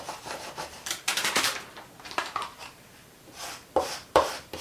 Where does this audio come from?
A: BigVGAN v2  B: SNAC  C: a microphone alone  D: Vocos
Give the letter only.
A